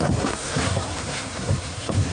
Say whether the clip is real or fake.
fake